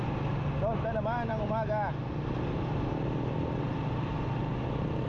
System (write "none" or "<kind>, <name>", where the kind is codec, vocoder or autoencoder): none